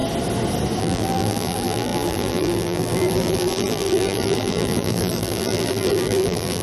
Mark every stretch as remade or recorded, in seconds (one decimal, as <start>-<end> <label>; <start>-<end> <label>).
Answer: 0.0-0.8 recorded; 0.8-6.6 remade